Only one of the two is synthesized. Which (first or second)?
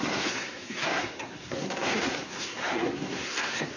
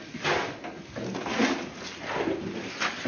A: first